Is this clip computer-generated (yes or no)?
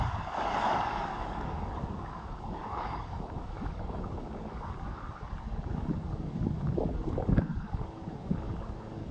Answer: yes